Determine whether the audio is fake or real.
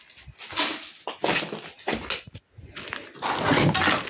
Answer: real